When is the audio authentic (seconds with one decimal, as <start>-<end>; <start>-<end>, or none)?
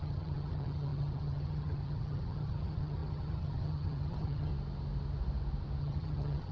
4.5-5.8